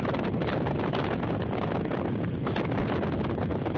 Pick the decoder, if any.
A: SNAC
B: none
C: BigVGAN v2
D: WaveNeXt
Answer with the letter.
B